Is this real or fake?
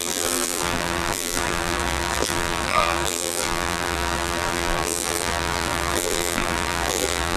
fake